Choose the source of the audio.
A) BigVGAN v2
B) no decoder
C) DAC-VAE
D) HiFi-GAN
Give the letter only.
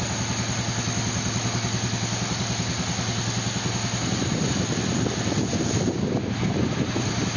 B